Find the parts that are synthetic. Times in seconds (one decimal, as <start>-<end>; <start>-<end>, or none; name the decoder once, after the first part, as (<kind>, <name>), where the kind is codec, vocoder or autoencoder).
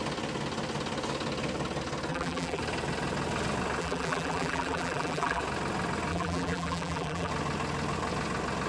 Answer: 2.1-2.6 (vocoder, BigVGAN v2); 3.8-5.4; 6.1-7.3